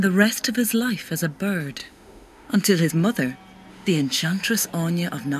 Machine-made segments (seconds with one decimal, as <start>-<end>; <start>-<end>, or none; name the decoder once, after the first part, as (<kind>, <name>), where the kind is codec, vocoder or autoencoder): 1.8-2.9 (autoencoder, DAC-VAE); 3.7-4.7